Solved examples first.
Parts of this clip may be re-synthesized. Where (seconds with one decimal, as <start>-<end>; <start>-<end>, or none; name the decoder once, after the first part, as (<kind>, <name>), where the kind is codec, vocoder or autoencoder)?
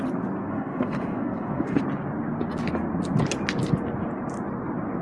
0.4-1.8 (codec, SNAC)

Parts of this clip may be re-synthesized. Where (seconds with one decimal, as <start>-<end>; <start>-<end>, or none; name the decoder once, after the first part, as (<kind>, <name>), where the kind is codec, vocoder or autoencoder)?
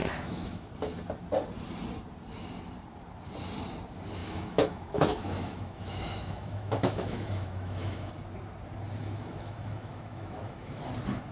0.0-0.7 (autoencoder, DAC-VAE); 4.2-8.1; 9.0-10.8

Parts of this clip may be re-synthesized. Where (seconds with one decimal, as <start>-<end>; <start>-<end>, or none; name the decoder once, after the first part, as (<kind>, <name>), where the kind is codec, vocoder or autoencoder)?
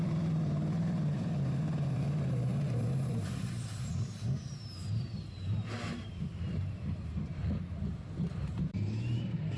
0.0-7.4 (vocoder, BigVGAN v2); 7.9-9.6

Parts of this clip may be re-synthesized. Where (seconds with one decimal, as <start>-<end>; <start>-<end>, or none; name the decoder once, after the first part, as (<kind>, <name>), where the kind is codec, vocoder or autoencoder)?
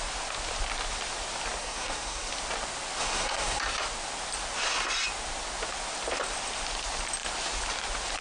1.6-2.3 (codec, SNAC); 3.0-3.6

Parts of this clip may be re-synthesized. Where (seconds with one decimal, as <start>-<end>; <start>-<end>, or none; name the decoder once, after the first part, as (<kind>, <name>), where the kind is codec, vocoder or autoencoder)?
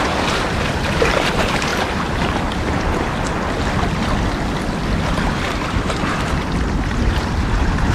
0.0-1.7 (vocoder, BigVGAN v2); 5.8-7.9